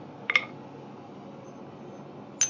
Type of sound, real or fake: real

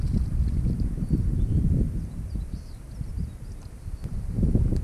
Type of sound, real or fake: real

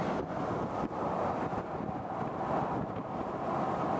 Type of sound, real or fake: real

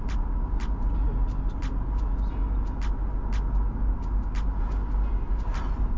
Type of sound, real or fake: real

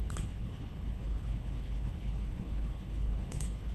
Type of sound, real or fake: fake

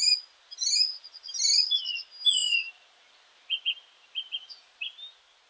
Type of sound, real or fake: real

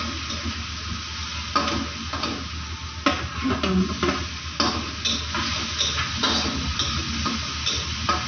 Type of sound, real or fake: real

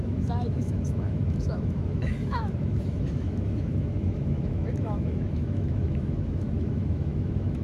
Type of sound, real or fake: fake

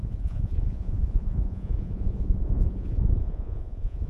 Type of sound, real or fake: fake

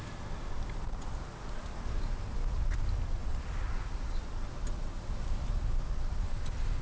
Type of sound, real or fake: real